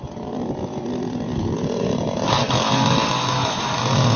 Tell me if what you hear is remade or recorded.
recorded